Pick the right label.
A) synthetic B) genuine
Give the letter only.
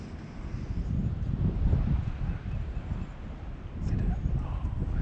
B